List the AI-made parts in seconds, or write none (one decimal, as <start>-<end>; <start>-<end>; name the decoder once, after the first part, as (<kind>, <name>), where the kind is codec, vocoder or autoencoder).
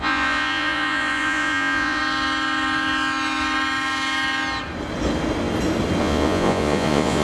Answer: 0.0-2.0 (vocoder, Vocos); 6.0-7.2